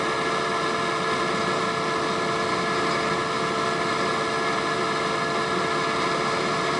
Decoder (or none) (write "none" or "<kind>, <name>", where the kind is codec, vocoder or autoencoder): none